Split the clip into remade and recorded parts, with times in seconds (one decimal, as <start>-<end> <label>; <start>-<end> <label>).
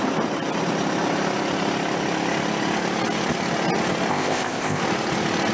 0.0-4.1 recorded; 4.1-4.8 remade; 4.8-5.5 recorded